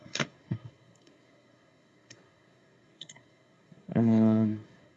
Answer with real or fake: fake